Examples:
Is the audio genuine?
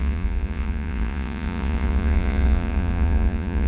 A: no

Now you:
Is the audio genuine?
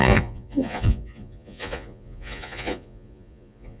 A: no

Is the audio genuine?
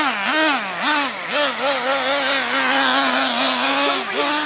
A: yes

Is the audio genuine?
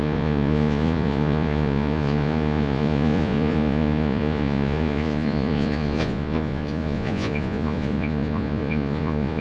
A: no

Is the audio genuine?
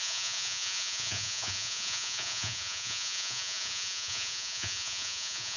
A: no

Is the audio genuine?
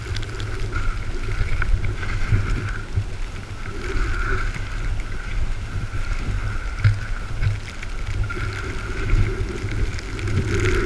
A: yes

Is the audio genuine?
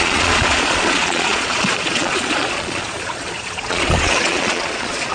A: no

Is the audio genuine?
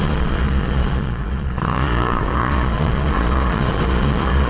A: no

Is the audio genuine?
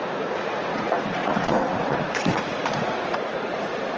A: no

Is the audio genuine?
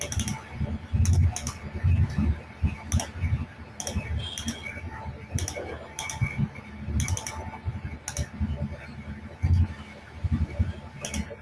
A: yes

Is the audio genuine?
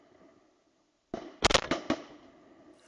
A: yes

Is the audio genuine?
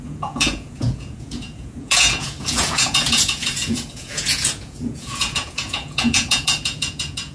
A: no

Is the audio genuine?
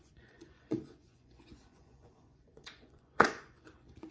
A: no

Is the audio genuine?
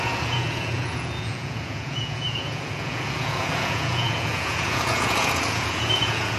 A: no